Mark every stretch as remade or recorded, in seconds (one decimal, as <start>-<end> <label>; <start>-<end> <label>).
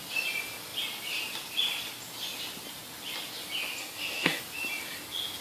0.0-3.8 recorded; 3.8-4.4 remade; 4.4-5.4 recorded